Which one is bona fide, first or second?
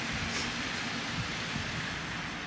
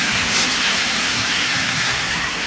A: first